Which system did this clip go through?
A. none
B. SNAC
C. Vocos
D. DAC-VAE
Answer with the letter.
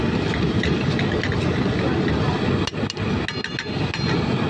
A